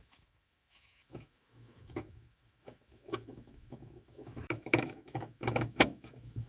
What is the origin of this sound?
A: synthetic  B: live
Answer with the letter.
A